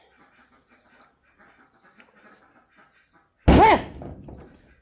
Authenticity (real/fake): real